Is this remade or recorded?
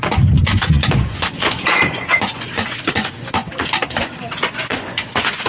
remade